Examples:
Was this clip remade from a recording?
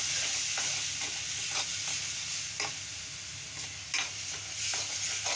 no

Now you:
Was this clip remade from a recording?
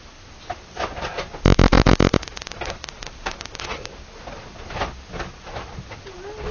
no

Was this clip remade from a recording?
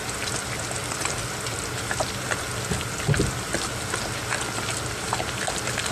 no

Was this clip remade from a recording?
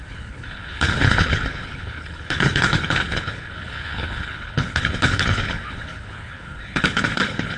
yes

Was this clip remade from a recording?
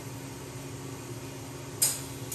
no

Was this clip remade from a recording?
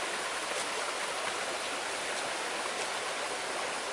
no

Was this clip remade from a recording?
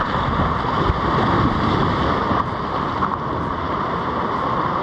no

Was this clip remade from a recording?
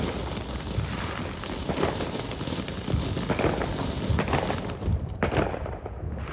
no